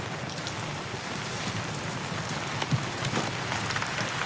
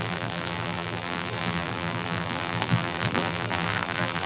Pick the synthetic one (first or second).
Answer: second